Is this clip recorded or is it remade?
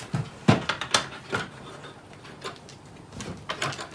recorded